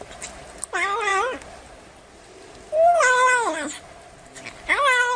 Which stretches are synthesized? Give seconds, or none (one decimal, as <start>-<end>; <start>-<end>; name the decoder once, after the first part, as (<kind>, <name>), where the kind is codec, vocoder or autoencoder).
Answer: none